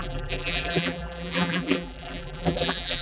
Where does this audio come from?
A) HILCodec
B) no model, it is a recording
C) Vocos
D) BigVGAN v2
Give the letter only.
D